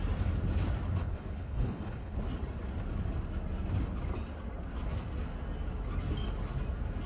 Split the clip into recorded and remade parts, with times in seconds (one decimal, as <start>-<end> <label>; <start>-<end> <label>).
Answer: 0.0-1.0 recorded; 1.0-2.2 remade; 2.2-7.1 recorded